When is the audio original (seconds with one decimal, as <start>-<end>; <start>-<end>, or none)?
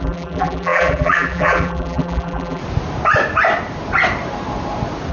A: 2.6-5.1